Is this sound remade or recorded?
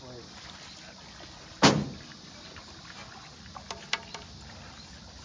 recorded